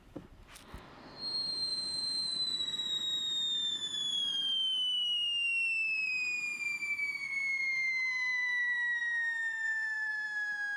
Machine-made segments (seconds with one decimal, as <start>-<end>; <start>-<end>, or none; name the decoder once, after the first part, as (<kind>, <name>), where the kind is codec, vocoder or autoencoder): 1.7-3.2 (vocoder, BigVGAN v2); 9.0-10.1